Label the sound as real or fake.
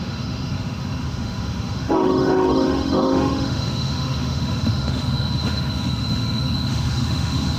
fake